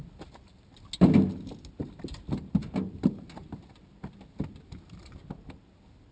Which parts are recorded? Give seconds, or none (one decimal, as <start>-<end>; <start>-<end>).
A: 0.0-6.1